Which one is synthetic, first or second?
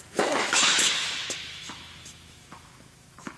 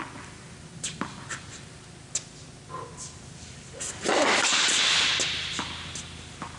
first